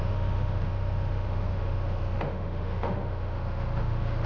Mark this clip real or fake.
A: fake